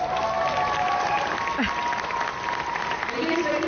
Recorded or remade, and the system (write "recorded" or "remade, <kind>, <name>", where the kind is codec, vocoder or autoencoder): recorded